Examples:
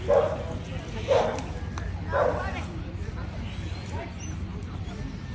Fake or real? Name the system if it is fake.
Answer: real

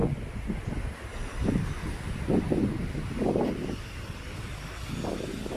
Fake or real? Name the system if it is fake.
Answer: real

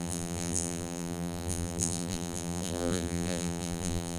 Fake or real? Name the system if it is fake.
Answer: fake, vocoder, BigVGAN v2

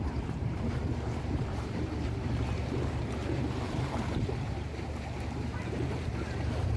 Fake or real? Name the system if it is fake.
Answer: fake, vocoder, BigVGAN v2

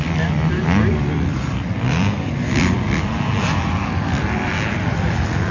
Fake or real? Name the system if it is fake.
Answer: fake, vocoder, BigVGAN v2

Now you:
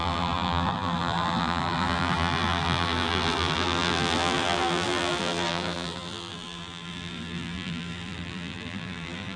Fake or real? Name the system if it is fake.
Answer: fake, vocoder, BigVGAN v2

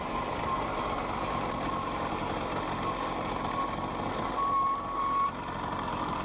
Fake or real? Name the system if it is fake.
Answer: fake, vocoder, BigVGAN v2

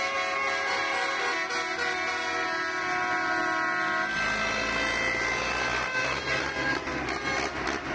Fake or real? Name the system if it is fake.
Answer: real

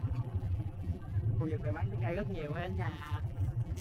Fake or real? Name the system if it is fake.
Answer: fake, vocoder, BigVGAN v2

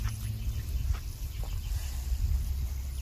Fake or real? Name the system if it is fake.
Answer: real